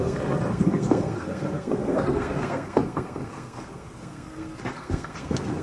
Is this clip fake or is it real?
fake